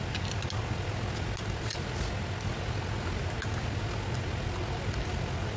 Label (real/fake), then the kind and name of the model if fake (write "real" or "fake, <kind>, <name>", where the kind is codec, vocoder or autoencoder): real